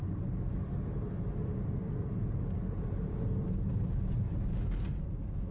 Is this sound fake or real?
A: real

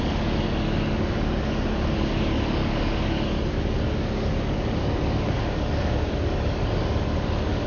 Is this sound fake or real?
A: fake